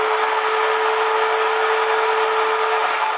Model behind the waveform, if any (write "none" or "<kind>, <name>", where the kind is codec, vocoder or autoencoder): none